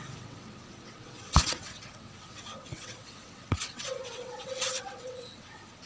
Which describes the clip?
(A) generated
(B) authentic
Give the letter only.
A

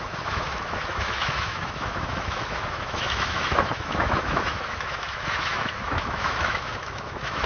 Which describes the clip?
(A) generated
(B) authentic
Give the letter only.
A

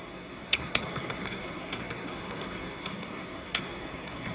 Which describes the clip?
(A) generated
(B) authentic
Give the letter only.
A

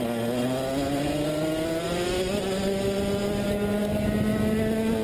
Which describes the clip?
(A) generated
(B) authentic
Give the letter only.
B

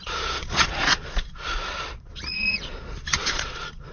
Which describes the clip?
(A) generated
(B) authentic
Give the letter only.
A